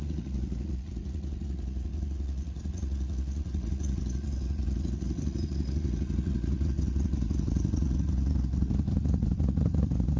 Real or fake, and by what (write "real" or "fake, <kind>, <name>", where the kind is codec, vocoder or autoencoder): fake, vocoder, Vocos